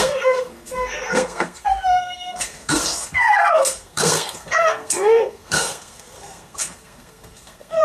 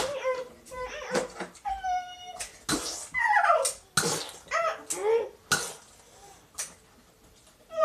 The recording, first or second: second